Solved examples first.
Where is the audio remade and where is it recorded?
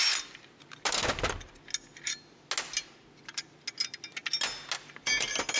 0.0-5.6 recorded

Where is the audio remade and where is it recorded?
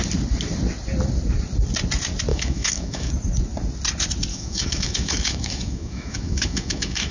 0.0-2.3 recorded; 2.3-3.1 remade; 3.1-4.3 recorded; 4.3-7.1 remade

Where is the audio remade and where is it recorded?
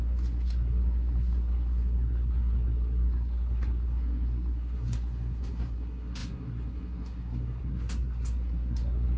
0.0-9.2 remade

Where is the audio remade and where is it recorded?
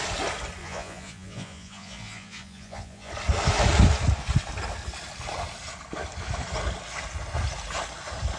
0.0-0.6 recorded; 0.6-3.1 remade; 3.1-8.4 recorded